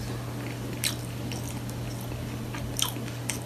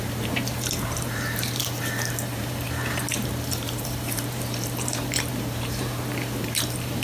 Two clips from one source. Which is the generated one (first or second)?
second